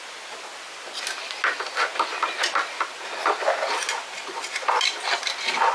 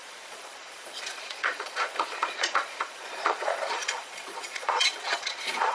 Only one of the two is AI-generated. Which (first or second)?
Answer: second